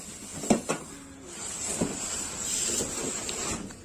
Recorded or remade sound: recorded